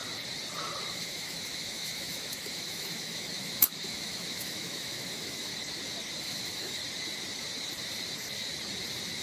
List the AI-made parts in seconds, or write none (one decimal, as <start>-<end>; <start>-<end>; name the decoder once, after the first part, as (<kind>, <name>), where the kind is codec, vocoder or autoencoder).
0.9-5.5 (autoencoder, DAC-VAE); 6.2-6.8